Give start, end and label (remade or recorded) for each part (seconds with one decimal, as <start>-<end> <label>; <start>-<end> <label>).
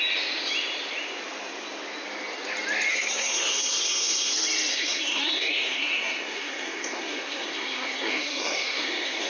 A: 0.0-2.9 recorded; 2.9-4.3 remade; 4.3-4.7 recorded; 4.7-9.3 remade